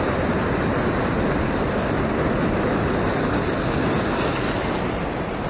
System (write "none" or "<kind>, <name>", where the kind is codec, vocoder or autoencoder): none